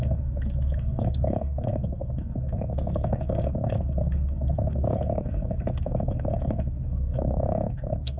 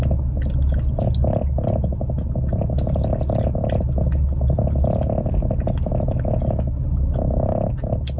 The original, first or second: second